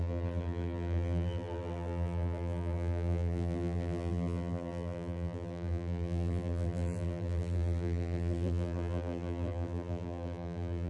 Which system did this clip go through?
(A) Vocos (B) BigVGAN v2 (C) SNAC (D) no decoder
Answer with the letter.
B